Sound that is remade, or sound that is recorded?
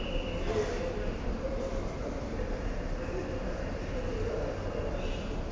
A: recorded